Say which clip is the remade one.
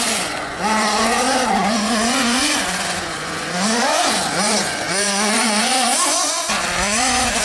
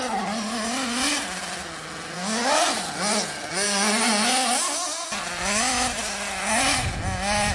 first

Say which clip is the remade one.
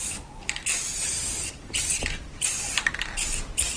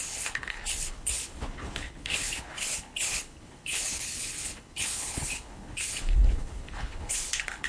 second